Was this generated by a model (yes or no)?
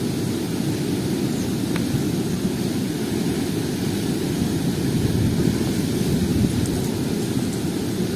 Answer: no